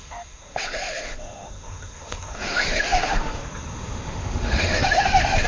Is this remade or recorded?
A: remade